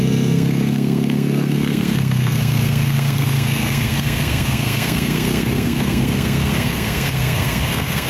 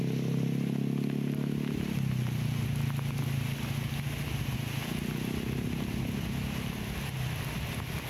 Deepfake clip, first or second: first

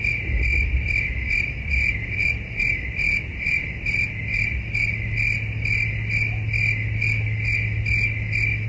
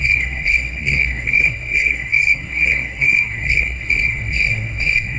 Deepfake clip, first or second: second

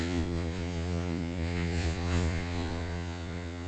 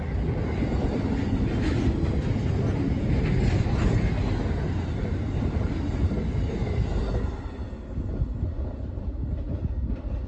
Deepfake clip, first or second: first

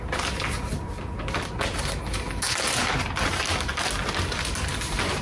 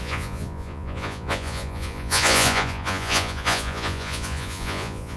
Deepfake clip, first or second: second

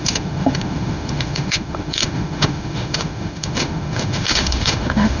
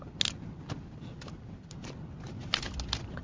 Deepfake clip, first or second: first